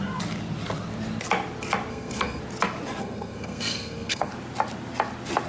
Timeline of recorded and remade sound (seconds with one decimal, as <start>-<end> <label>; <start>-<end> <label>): 0.0-1.9 recorded; 1.9-2.4 remade; 2.4-3.0 recorded; 3.0-4.3 remade; 4.3-5.5 recorded